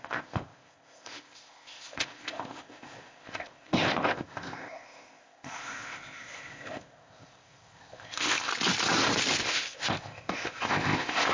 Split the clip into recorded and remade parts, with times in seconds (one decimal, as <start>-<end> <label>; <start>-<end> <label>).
0.0-8.5 remade; 8.5-9.4 recorded; 9.4-11.3 remade